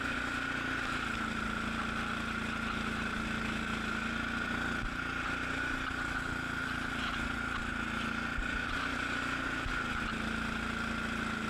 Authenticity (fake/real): real